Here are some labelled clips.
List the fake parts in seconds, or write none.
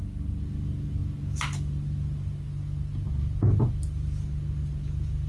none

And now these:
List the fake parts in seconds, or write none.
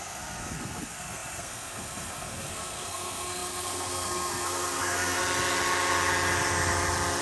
0.0-5.2 (codec, SNAC)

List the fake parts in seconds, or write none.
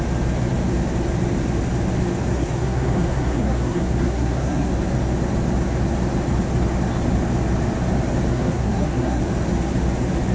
2.3-4.7 (codec, SNAC); 8.3-9.2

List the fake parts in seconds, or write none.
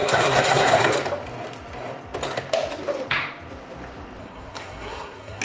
0.0-0.9 (codec, SNAC); 4.2-5.4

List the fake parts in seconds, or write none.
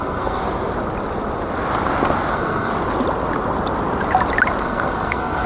0.0-0.4 (codec, SNAC); 2.3-2.7; 4.6-5.5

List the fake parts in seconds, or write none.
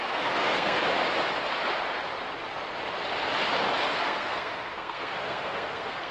0.0-0.8 (codec, SNAC); 3.9-6.1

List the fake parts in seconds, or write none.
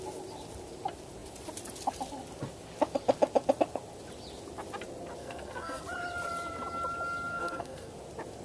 5.2-5.8 (codec, SNAC); 7.3-7.9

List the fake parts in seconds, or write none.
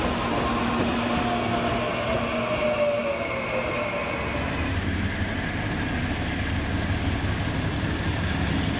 none